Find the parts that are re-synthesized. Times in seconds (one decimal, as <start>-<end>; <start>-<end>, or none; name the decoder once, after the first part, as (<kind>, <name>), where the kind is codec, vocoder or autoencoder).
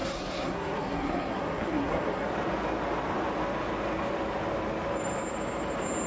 0.0-2.3 (codec, SNAC)